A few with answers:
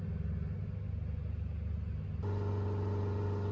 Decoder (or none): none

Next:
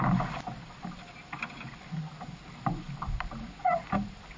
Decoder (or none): none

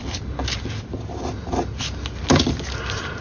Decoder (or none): none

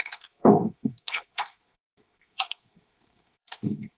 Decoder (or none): codec, SNAC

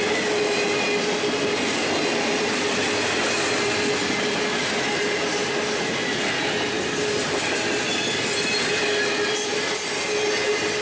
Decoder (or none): none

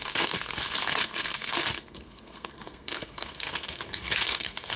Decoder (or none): codec, SNAC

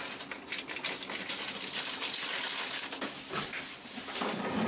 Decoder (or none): none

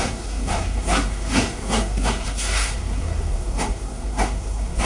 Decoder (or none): codec, SNAC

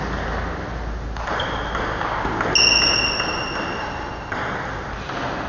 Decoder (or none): none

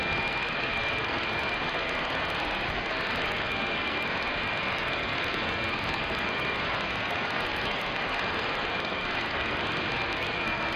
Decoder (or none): codec, SNAC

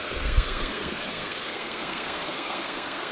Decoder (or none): codec, SNAC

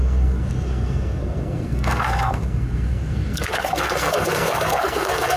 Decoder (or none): codec, SNAC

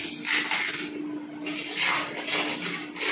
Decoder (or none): none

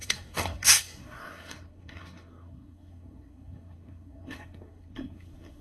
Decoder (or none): codec, SNAC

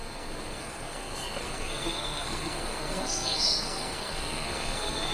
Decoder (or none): codec, SNAC